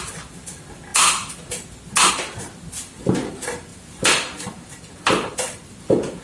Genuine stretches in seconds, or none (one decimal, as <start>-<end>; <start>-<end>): 0.0-6.2